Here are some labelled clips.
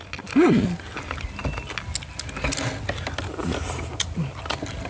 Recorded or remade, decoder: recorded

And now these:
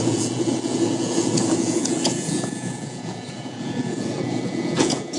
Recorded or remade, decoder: remade, vocoder, Vocos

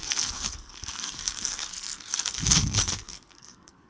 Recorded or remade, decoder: remade, codec, SNAC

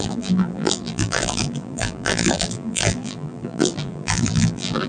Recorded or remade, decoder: remade, vocoder, BigVGAN v2